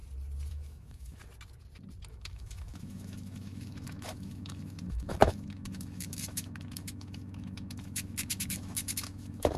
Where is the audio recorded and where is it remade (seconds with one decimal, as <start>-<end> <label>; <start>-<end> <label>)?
0.0-0.5 recorded; 0.5-1.2 remade; 1.2-2.1 recorded; 2.1-9.6 remade